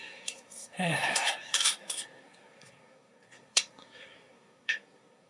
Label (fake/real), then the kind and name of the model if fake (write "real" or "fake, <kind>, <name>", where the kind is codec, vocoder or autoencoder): fake, codec, SNAC